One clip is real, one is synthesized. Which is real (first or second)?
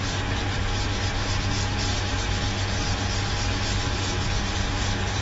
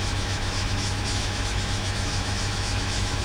first